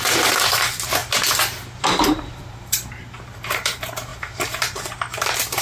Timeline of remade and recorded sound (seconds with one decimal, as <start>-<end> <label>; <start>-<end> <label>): 0.0-1.0 remade; 1.0-1.8 recorded; 1.8-5.6 remade